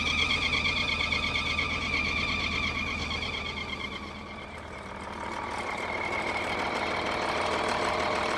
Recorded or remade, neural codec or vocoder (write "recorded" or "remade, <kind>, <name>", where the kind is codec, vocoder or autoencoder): recorded